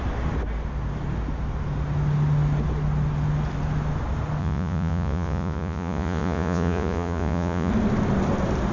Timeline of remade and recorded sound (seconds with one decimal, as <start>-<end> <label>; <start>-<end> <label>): 0.0-4.4 recorded; 4.4-7.7 remade; 7.7-8.7 recorded

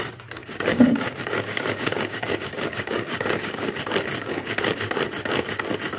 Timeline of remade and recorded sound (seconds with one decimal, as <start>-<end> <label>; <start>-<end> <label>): 0.0-0.4 recorded; 0.4-3.8 remade; 3.8-4.2 recorded; 4.2-4.8 remade; 4.8-6.0 recorded

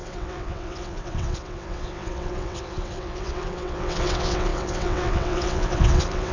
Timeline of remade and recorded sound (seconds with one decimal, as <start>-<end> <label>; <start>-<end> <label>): 0.0-6.3 remade

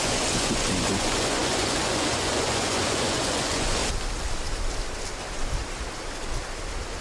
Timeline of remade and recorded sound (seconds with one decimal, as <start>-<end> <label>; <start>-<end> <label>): 0.0-3.8 remade; 3.8-7.0 recorded

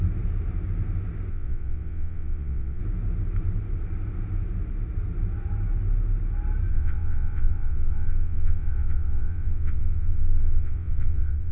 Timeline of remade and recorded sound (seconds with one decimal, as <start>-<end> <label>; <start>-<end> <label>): 0.0-1.3 recorded; 1.3-2.8 remade; 2.8-6.7 recorded; 6.7-11.5 remade

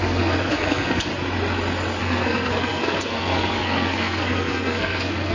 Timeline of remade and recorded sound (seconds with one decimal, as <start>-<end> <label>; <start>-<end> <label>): 0.0-1.1 remade; 1.1-2.0 recorded; 2.0-5.3 remade

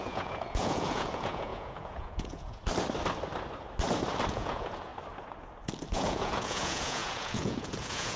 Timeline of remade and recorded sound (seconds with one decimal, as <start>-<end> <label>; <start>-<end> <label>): 0.0-2.6 remade; 2.6-4.3 recorded; 4.3-4.9 remade; 4.9-5.9 recorded; 5.9-8.2 remade

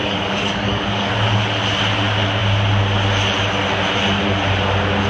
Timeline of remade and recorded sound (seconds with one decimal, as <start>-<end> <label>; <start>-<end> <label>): 0.0-1.1 remade; 1.1-5.1 recorded